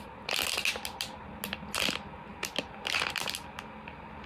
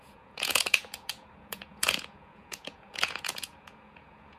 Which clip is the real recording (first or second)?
first